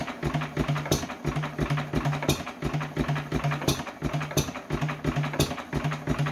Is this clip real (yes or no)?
yes